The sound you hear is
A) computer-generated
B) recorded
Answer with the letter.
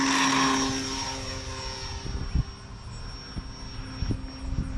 B